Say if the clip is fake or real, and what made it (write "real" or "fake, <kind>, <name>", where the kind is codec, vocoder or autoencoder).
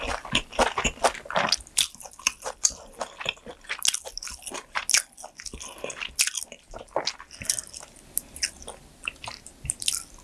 real